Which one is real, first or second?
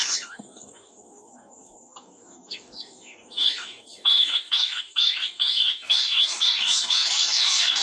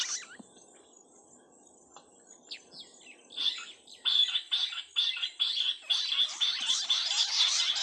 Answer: second